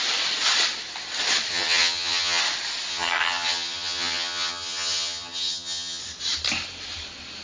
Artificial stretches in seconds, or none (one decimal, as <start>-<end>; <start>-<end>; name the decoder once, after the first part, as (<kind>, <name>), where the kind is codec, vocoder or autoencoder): 1.5-2.4 (vocoder, HiFi-GAN); 2.9-6.0